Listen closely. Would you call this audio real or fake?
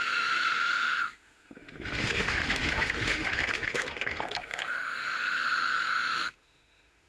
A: fake